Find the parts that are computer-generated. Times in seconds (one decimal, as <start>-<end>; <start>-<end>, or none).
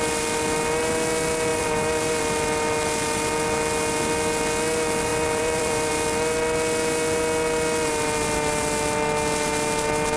1.5-2.2; 5.1-5.9